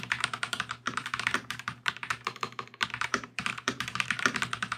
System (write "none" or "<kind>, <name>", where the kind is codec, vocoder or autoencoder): vocoder, BigVGAN v2